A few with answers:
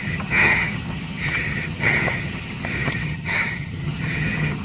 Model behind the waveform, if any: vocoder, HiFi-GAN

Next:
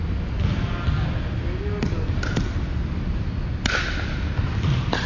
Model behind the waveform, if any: none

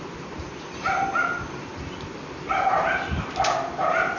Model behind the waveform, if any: none